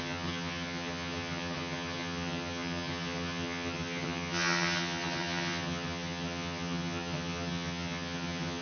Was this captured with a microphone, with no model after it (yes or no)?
no